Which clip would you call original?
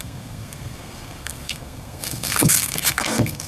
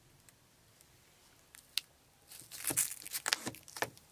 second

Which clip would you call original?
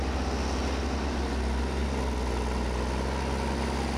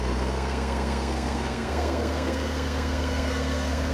first